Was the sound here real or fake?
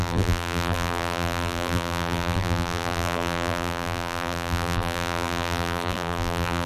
fake